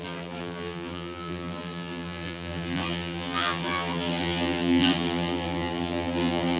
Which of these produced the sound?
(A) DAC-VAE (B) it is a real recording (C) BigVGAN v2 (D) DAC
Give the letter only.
C